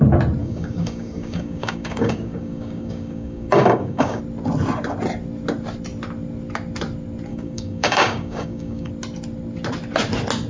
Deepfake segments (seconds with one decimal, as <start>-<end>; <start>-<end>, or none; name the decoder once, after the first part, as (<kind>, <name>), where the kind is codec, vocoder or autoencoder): 0.4-4.2 (codec, DAC); 7.3-8.9